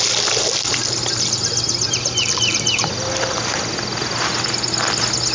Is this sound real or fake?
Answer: real